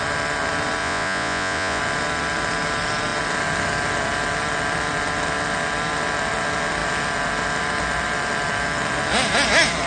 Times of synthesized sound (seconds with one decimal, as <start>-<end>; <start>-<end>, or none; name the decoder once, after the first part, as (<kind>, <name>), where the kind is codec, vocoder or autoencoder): 0.8-1.8 (vocoder, Vocos)